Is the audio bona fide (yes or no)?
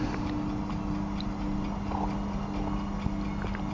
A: yes